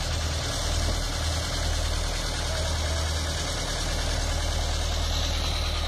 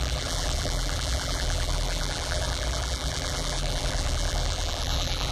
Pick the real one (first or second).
first